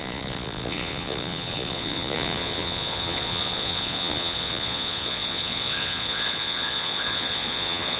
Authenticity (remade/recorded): remade